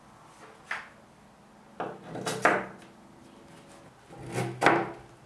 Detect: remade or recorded recorded